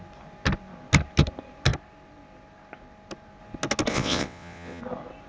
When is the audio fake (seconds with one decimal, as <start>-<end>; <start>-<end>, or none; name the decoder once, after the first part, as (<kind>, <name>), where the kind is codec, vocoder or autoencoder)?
3.9-4.8 (vocoder, WaveNeXt)